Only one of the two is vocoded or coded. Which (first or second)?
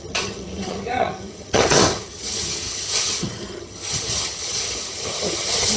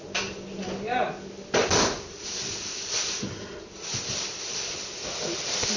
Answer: first